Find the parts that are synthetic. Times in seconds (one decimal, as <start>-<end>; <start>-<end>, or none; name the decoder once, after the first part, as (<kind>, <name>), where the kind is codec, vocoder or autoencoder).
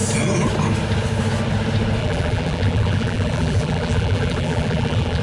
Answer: 2.0-5.2 (vocoder, BigVGAN v2)